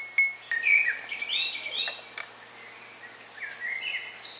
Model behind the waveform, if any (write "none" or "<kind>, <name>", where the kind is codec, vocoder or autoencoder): none